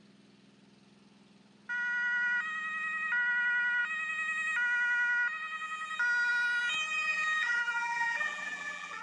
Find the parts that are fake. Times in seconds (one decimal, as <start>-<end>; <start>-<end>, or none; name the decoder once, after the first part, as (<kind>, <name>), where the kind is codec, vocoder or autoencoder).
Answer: 7.1-9.0 (vocoder, BigVGAN v2)